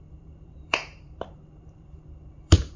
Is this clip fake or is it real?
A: fake